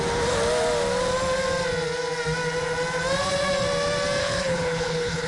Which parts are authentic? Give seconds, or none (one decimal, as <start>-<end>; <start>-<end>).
0.0-4.2